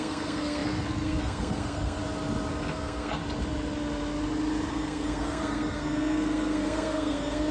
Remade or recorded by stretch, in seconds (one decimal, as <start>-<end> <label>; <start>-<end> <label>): 0.0-2.0 remade; 2.0-2.5 recorded; 2.5-3.2 remade; 3.2-4.7 recorded; 4.7-7.5 remade